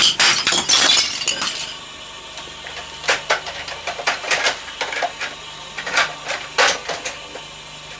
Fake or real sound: real